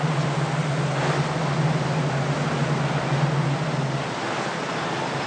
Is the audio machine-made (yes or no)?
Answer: no